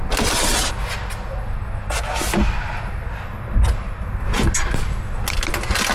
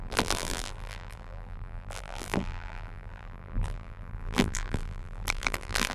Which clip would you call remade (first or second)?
second